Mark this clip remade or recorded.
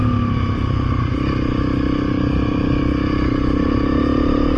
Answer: recorded